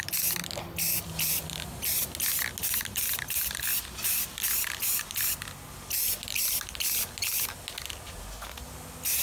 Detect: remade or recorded recorded